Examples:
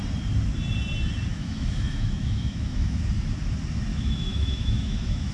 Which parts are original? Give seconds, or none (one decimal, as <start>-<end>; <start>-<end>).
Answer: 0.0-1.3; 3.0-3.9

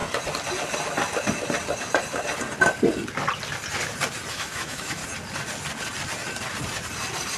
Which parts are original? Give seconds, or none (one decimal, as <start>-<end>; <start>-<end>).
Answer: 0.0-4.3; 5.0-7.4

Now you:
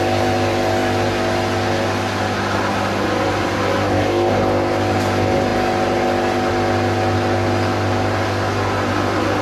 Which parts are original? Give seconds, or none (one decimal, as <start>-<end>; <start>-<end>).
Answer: 0.0-9.4

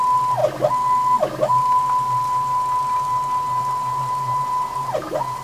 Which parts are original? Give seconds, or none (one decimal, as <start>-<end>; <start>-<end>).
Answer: 0.0-5.4

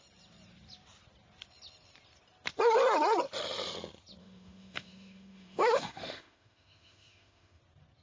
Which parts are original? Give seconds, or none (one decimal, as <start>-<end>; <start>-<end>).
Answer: 0.0-4.2; 7.6-8.0

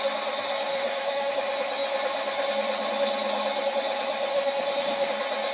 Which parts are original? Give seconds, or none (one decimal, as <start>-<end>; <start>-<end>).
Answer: 0.0-0.7; 1.3-4.3; 5.1-5.5

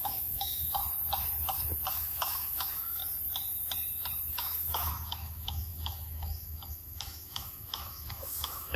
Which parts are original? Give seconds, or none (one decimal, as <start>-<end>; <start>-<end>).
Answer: 0.8-1.9; 3.0-4.3